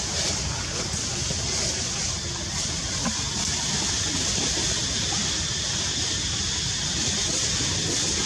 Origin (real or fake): real